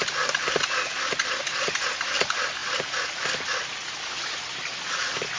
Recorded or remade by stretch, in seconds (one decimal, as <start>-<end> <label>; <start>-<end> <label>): 0.0-5.4 recorded